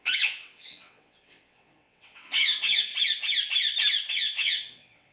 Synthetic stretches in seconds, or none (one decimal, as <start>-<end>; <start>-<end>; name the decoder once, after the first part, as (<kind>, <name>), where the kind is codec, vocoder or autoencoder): 0.0-2.9 (vocoder, WaveNeXt); 4.1-5.1